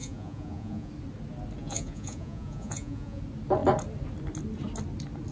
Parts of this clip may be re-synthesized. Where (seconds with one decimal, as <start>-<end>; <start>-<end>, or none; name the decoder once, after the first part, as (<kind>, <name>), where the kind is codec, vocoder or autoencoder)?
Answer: 0.0-0.9 (vocoder, Vocos); 1.6-3.2